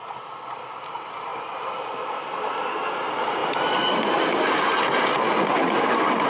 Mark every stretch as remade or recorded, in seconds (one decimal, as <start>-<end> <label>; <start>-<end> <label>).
0.0-6.3 recorded